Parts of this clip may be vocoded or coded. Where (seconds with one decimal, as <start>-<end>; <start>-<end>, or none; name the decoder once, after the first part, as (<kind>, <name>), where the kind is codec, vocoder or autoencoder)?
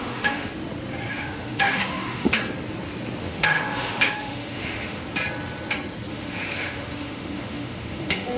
0.0-0.5 (autoencoder, DAC-VAE); 1.1-2.4; 3.2-5.0; 6.1-8.4